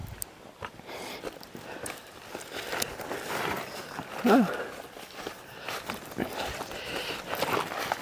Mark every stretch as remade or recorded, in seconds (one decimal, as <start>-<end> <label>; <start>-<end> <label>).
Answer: 0.0-8.0 recorded